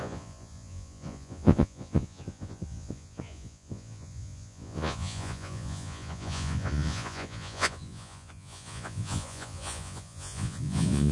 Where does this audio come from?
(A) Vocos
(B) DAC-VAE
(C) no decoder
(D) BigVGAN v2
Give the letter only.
A